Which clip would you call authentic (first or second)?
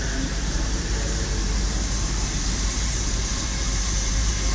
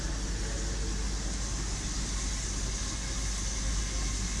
second